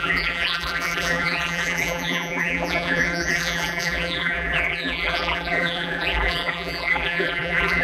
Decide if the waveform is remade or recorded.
remade